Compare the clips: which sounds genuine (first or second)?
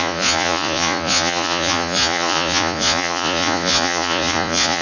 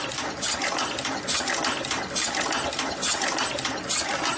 second